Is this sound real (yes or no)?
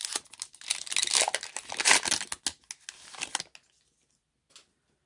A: yes